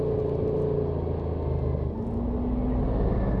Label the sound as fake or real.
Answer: real